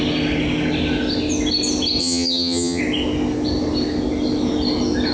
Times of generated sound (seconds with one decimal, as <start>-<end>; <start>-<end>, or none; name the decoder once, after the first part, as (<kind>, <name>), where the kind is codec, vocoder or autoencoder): 2.0-2.8 (vocoder, HiFi-GAN)